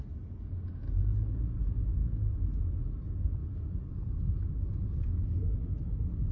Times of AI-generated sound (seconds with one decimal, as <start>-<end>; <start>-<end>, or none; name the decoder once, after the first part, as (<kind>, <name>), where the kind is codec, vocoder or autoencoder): none